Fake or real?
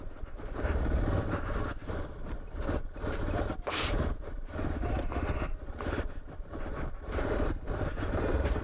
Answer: real